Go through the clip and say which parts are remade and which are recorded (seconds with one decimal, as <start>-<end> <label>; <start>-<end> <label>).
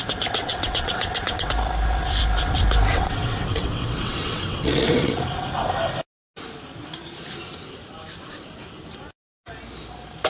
0.0-0.4 recorded; 0.4-1.5 remade; 1.5-2.9 recorded; 2.9-5.2 remade; 5.2-10.3 recorded